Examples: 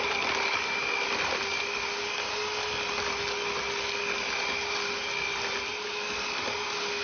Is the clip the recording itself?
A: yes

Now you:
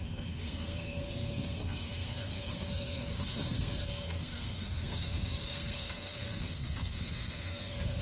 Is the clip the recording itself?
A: no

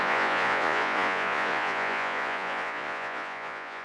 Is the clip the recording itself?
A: no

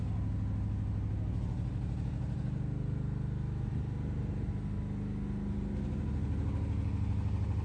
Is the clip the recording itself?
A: yes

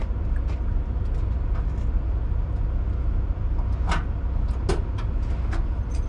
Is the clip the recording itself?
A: yes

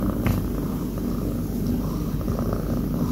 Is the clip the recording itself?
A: yes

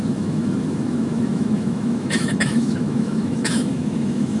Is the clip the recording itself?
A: no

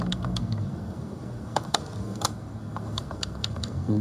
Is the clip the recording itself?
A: no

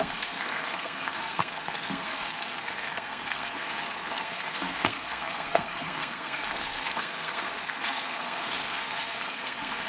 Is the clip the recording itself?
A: no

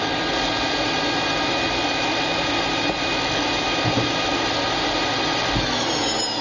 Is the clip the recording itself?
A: yes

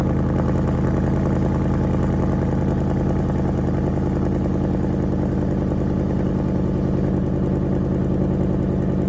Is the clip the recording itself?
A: yes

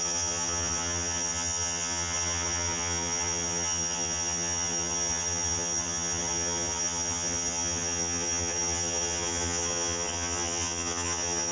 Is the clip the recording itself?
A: no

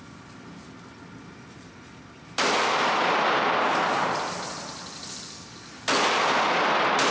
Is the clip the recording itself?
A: yes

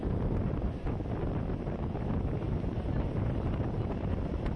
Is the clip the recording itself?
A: yes